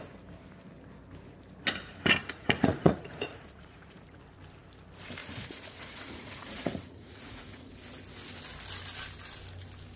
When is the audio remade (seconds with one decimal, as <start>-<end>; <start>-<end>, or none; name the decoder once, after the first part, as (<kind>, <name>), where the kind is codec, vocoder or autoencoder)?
2.2-4.2 (vocoder, Vocos); 5.2-7.7

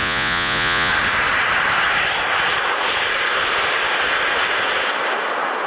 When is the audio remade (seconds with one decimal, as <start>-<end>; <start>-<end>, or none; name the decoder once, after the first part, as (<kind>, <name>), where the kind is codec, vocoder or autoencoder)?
0.0-0.9 (vocoder, Vocos)

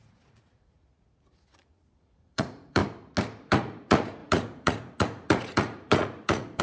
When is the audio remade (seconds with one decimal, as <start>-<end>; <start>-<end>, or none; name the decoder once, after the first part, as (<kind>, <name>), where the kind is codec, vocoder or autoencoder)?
0.0-2.8 (vocoder, Vocos); 3.4-6.6